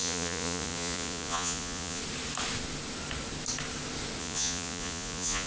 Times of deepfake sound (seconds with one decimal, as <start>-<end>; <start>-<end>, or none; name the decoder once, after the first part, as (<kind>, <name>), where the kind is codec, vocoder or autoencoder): 0.0-2.0 (vocoder, Vocos); 4.2-5.5